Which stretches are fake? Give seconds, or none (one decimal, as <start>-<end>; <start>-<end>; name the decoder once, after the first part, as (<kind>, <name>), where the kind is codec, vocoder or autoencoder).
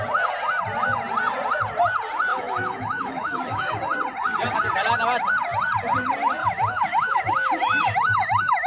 2.3-3.8 (autoencoder, DAC-VAE); 6.4-8.7